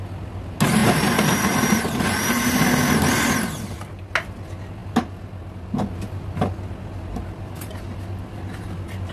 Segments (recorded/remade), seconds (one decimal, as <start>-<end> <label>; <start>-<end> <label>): 0.0-0.8 recorded; 0.8-2.6 remade; 2.6-9.1 recorded

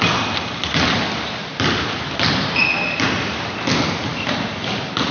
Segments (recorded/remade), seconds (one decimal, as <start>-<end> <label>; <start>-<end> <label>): 0.0-5.1 recorded

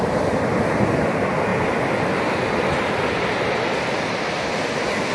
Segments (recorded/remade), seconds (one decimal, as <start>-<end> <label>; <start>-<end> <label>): 0.0-5.1 recorded

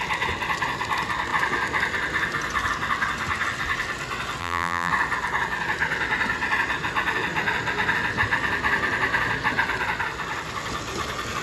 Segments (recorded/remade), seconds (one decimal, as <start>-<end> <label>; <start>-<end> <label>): 0.0-4.4 recorded; 4.4-4.9 remade; 4.9-11.4 recorded